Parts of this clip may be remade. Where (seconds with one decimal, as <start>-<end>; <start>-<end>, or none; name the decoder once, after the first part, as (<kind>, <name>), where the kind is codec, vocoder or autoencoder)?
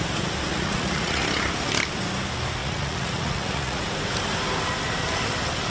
0.5-1.2 (vocoder, Vocos); 2.6-3.8